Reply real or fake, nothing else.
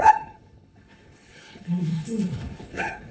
fake